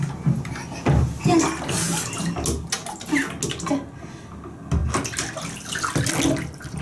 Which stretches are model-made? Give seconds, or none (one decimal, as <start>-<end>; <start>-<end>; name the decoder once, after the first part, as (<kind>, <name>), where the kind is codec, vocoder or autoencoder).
none